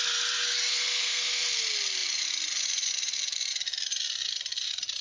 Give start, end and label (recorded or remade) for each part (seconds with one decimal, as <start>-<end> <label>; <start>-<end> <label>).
0.0-0.7 recorded; 0.7-1.4 remade; 1.4-5.0 recorded